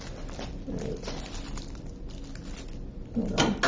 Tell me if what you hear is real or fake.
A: real